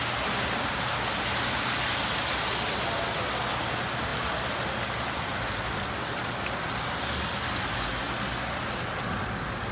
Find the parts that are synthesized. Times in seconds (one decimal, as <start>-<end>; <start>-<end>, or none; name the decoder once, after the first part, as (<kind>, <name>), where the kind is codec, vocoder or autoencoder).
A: none